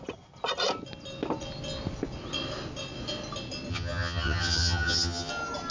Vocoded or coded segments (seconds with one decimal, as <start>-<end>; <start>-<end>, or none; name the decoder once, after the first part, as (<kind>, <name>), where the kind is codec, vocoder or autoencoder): 3.7-5.3 (vocoder, HiFi-GAN)